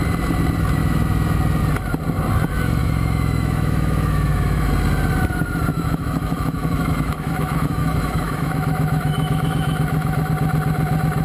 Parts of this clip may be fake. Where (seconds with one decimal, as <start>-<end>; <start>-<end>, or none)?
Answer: 2.8-4.7; 5.7-10.3